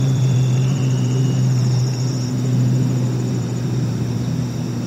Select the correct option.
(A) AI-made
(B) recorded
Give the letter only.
A